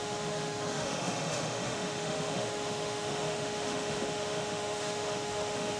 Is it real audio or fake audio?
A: fake